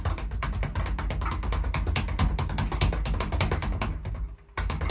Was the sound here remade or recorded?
recorded